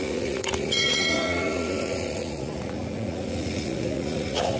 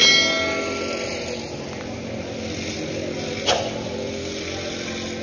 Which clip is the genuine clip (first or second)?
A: second